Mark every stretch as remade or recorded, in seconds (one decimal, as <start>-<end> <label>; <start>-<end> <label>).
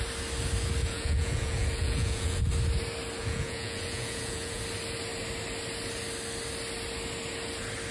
0.0-0.8 recorded; 0.8-2.5 remade; 2.5-3.2 recorded; 3.2-4.6 remade; 4.6-7.9 recorded